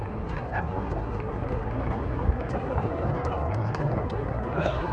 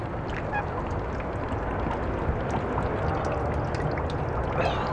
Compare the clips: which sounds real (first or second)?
second